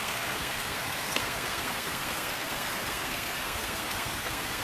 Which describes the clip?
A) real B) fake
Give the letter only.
B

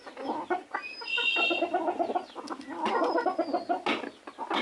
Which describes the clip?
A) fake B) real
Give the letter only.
B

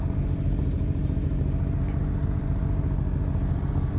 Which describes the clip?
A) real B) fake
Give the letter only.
A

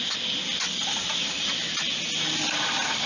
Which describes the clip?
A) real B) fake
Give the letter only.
A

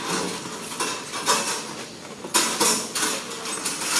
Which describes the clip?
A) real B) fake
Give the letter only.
A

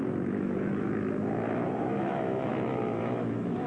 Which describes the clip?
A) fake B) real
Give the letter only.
A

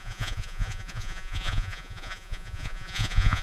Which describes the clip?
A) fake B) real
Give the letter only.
A